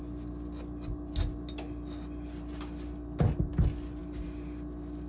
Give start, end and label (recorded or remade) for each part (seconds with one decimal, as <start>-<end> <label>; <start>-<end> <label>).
0.0-5.1 recorded